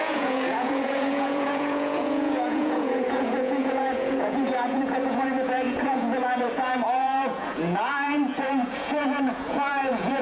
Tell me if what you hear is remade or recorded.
remade